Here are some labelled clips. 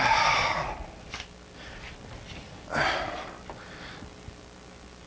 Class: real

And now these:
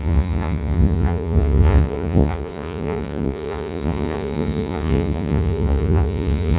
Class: fake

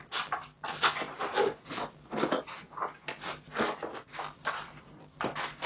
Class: real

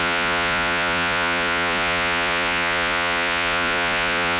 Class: fake